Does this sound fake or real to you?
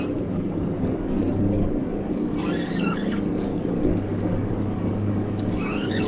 fake